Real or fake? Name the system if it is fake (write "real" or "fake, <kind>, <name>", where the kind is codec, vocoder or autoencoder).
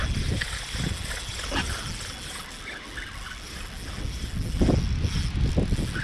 real